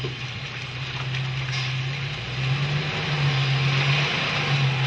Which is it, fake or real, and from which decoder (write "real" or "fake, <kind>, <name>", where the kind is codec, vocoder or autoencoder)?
real